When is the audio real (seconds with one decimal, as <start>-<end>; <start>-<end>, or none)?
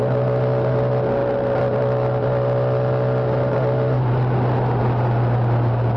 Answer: 0.0-6.0